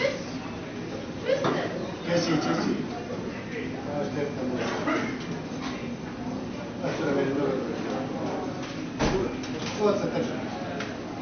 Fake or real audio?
real